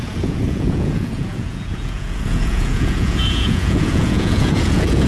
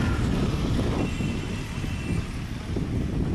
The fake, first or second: first